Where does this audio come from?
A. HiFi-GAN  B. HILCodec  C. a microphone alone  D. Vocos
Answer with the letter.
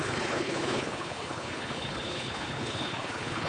B